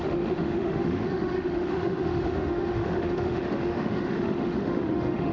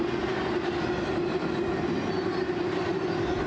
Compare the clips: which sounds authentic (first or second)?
second